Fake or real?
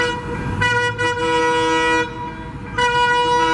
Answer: real